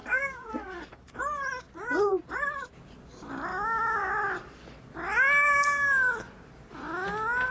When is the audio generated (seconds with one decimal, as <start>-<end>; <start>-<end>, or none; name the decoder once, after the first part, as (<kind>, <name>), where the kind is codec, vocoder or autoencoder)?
0.0-1.2 (codec, DAC); 3.5-4.1